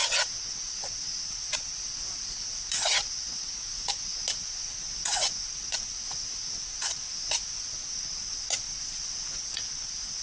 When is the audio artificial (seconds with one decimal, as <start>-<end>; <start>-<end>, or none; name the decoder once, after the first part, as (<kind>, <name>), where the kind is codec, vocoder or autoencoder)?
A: 0.0-10.2 (vocoder, Vocos)